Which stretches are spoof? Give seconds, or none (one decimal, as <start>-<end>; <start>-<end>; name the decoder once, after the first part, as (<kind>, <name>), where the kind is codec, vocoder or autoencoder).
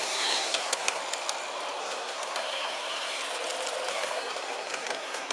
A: 0.0-1.0 (codec, SNAC); 1.8-3.2; 3.9-5.3